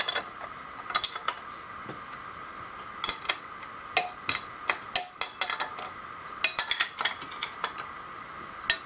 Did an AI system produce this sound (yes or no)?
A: no